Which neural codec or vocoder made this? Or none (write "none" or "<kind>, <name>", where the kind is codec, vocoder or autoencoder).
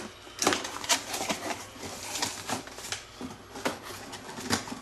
none